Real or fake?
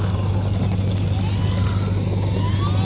real